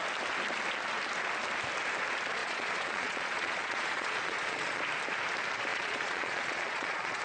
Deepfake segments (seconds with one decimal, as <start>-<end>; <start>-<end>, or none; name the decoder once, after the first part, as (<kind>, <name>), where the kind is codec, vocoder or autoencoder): 2.4-4.8 (vocoder, Vocos); 5.7-7.2